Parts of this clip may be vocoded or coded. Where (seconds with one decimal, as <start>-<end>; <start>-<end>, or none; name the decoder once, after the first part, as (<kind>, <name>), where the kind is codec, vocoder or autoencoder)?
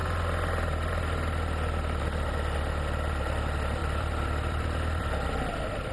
3.8-5.1 (vocoder, BigVGAN v2)